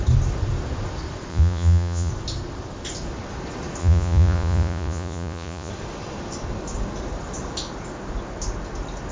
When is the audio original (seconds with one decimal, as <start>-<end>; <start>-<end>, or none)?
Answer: 0.0-1.3; 2.1-3.8; 5.7-9.1